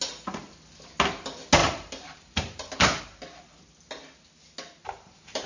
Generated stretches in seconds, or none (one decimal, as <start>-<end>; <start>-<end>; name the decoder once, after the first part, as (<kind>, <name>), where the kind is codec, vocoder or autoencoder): 1.6-3.0 (vocoder, BigVGAN v2); 4.8-5.5